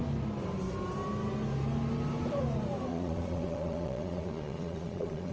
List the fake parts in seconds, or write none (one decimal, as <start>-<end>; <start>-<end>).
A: 2.9-5.3

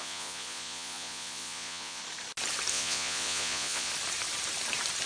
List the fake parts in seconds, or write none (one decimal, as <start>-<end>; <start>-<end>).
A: 0.0-2.0; 2.7-3.9